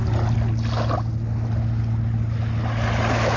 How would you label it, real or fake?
real